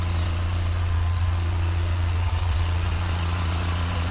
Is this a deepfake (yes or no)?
yes